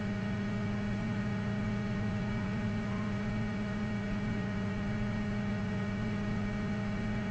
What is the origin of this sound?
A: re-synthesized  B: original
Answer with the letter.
A